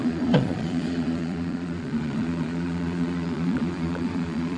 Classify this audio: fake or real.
fake